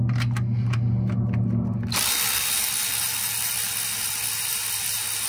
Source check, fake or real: real